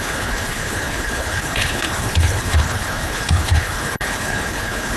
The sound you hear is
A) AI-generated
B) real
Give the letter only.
A